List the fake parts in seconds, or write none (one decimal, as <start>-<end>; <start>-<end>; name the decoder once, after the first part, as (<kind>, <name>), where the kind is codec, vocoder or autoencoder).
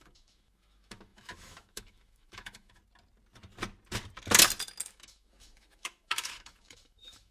0.0-2.8 (autoencoder, DAC-VAE); 4.9-7.3